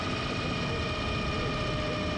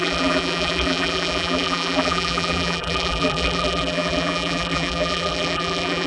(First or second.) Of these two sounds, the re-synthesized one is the second